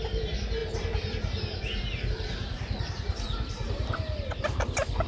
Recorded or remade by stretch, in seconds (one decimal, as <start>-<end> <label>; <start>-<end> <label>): 0.0-5.1 recorded